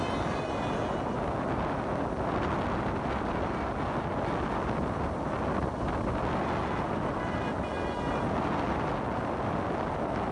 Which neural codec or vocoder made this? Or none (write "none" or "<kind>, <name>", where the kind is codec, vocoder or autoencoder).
none